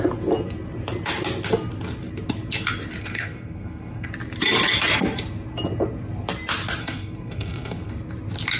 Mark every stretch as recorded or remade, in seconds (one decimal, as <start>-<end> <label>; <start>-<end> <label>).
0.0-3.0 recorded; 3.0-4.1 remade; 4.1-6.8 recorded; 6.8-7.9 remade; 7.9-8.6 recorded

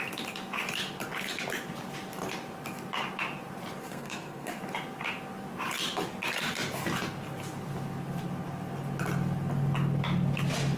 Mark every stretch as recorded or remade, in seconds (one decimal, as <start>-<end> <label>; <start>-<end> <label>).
0.0-3.9 recorded; 3.9-4.6 remade; 4.6-10.8 recorded

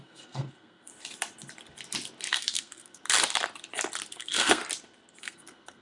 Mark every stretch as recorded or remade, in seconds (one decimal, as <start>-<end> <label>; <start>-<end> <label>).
0.0-0.9 remade; 0.9-2.3 recorded; 2.3-3.0 remade; 3.0-4.1 recorded; 4.1-4.6 remade; 4.6-5.2 recorded; 5.2-5.8 remade